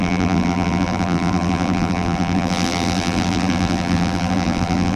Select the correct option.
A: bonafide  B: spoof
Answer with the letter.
B